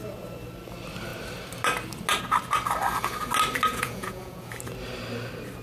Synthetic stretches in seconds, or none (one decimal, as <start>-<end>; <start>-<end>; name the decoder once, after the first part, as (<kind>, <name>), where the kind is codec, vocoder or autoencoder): 3.7-4.5 (vocoder, Vocos)

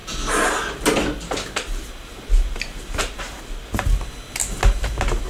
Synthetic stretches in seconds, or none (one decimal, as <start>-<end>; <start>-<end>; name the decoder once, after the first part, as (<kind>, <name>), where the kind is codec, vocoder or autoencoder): none

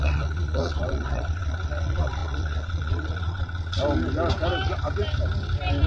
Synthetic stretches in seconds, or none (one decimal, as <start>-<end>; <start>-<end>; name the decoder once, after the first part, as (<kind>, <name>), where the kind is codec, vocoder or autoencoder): 0.0-3.8 (vocoder, Vocos)

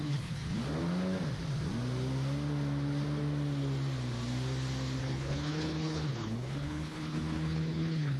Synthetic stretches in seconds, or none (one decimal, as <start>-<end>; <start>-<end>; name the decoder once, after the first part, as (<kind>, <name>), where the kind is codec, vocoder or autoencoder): 0.0-0.6 (codec, HILCodec); 5.0-8.2